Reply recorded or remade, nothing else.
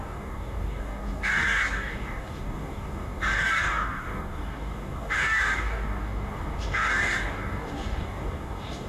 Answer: remade